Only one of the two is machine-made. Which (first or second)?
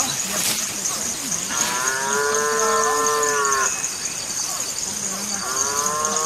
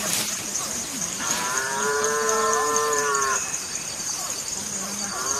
second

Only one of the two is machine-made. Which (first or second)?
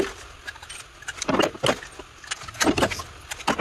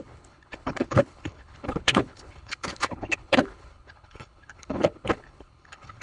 second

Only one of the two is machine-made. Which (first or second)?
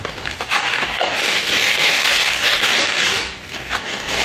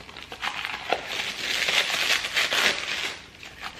first